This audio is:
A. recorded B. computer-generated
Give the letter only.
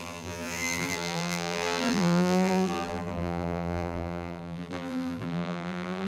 B